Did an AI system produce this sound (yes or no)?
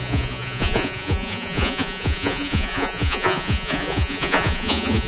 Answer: yes